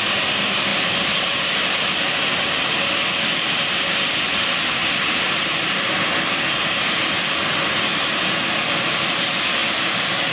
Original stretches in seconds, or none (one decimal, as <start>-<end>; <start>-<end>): 0.0-0.7; 1.8-4.8; 5.8-10.3